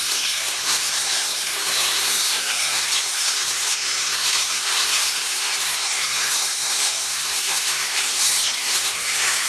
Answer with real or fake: fake